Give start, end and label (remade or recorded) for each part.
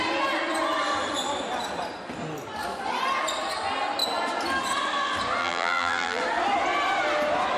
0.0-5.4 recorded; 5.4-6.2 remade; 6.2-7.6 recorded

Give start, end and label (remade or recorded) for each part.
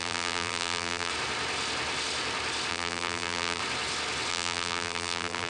0.0-1.1 remade; 1.1-2.7 recorded; 2.7-3.6 remade; 3.6-4.3 recorded; 4.3-5.5 remade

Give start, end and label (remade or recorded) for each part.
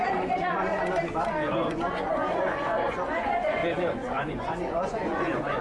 0.0-0.7 remade; 0.7-1.5 recorded; 1.5-5.6 remade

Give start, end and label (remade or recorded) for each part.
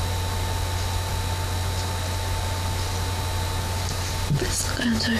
0.0-5.2 recorded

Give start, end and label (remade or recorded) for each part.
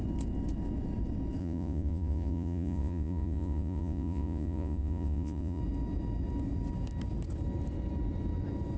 0.0-1.4 recorded; 1.4-5.6 remade; 5.6-8.8 recorded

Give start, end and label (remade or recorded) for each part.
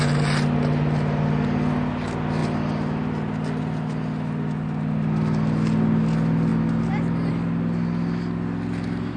0.0-9.2 recorded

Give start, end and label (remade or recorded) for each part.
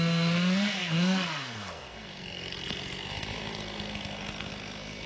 0.0-5.1 remade